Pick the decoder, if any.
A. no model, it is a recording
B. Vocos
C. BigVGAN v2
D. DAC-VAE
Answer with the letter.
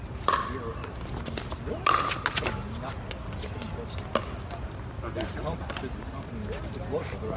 A